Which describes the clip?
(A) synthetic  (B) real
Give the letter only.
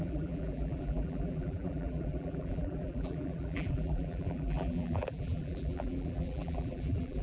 A